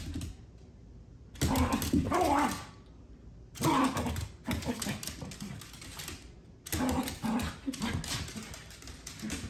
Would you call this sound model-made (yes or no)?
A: no